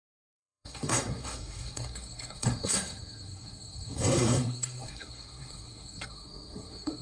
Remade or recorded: remade